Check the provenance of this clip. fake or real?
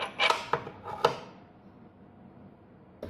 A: real